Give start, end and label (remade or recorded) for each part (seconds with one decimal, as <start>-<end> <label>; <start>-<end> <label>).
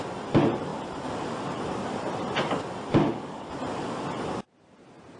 0.0-3.0 recorded; 3.0-3.5 remade; 3.5-5.2 recorded